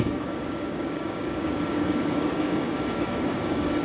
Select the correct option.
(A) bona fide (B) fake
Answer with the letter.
B